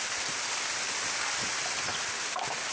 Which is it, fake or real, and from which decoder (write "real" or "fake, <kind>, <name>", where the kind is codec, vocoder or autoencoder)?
real